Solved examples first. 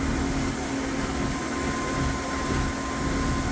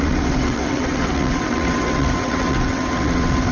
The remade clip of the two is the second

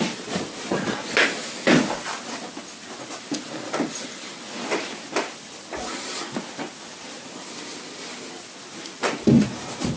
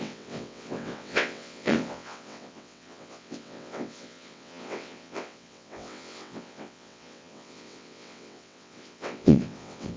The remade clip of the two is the second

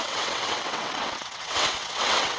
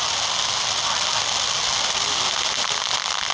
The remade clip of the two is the first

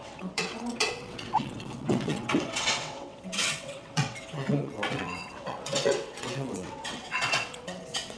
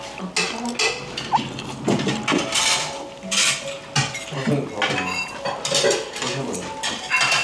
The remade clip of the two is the first